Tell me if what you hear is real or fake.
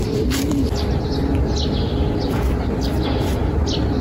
real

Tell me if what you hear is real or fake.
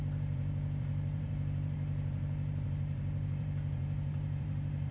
fake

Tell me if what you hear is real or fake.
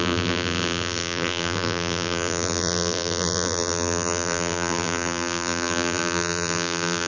fake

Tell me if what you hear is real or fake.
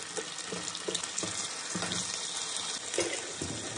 real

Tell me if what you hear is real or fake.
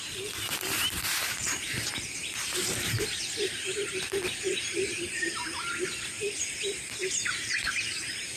fake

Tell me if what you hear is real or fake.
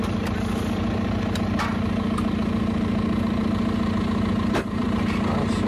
fake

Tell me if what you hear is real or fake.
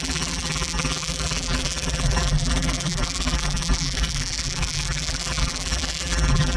fake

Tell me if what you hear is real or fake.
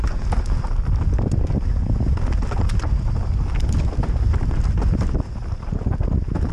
real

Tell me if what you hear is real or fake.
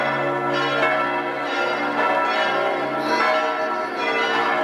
real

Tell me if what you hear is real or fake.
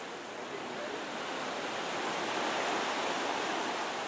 real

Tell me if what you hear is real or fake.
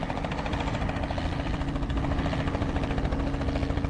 fake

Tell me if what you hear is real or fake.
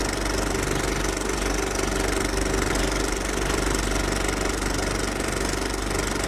real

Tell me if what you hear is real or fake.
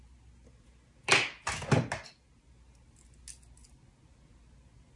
real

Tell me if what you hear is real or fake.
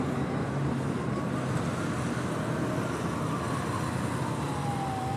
real